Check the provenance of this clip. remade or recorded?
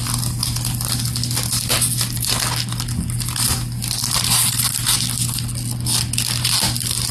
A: recorded